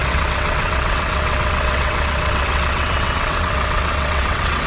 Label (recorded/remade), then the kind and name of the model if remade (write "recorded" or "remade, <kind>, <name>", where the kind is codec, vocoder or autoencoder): remade, vocoder, WaveNeXt